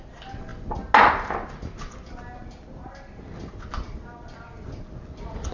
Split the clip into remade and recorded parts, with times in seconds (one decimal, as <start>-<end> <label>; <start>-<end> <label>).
0.0-5.5 recorded

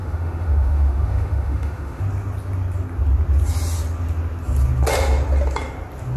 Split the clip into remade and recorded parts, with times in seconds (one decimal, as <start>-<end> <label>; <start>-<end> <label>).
0.0-2.0 remade; 2.0-6.2 recorded

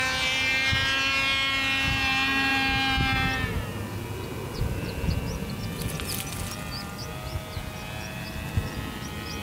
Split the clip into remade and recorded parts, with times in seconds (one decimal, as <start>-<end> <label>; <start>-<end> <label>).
0.0-9.4 recorded

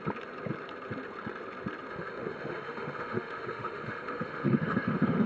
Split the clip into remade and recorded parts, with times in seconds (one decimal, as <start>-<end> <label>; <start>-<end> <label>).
0.0-1.9 recorded; 1.9-5.3 remade

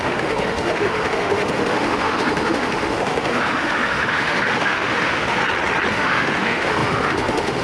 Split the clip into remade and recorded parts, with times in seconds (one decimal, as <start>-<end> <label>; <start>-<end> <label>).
0.0-5.4 remade; 5.4-5.9 recorded; 5.9-7.6 remade

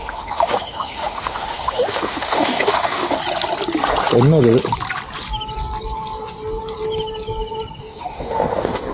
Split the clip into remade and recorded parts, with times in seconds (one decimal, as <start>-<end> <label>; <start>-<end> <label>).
0.0-3.2 remade; 3.2-7.8 recorded; 7.8-8.9 remade

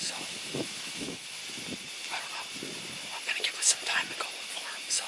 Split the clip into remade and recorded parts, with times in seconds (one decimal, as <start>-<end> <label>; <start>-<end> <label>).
0.0-1.4 remade; 1.4-4.5 recorded; 4.5-5.1 remade